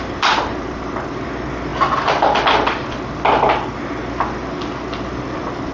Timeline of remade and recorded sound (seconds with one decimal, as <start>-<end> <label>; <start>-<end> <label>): 0.0-5.7 recorded